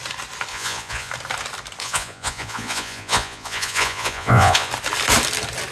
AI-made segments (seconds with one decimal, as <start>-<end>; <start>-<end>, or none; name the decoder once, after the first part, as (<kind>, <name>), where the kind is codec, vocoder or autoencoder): 0.5-1.1 (vocoder, Vocos); 1.8-4.7